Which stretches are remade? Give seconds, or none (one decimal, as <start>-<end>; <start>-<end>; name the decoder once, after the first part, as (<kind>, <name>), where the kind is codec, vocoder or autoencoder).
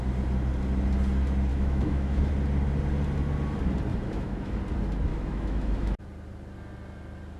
1.5-2.3 (autoencoder, DAC-VAE); 3.9-4.6; 5.1-6.0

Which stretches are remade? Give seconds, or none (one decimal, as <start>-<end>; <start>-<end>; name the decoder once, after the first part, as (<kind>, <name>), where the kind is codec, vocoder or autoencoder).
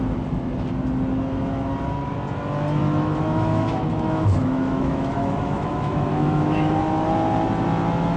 2.8-6.8 (autoencoder, DAC-VAE)